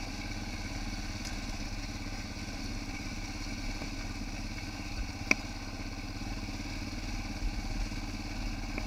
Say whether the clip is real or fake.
real